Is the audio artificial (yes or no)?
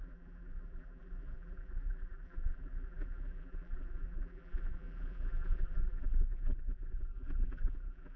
yes